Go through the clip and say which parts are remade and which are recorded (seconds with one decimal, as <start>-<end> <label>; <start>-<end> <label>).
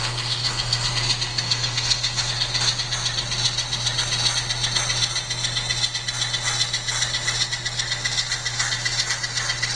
0.0-0.9 remade; 0.9-1.3 recorded; 1.3-2.3 remade; 2.3-9.8 recorded